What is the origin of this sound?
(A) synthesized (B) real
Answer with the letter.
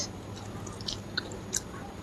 B